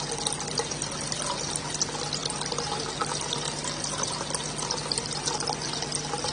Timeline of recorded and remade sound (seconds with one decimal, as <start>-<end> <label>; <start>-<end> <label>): 0.0-6.3 recorded

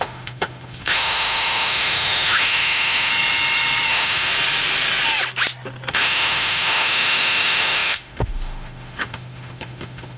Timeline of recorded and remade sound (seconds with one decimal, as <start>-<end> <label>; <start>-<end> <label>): 0.0-3.1 remade; 3.1-3.9 recorded; 3.9-4.3 remade; 4.3-5.9 recorded; 5.9-10.2 remade

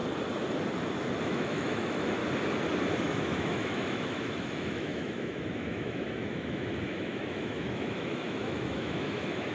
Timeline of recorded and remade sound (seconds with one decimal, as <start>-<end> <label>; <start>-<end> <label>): 0.0-1.2 recorded; 1.2-2.2 remade; 2.2-3.0 recorded; 3.0-9.5 remade

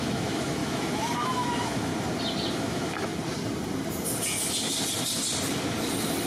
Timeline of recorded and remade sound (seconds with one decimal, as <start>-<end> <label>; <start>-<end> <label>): 0.0-1.9 remade; 1.9-2.5 recorded; 2.5-3.1 remade; 3.1-6.3 recorded